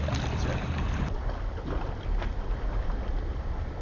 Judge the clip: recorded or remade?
recorded